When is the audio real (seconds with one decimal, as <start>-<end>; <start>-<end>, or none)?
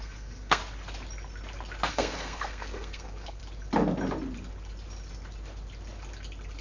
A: 0.6-1.9; 3.4-6.6